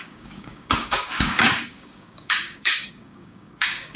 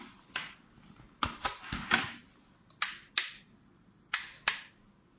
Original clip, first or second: second